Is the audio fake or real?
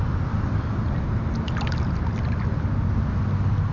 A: real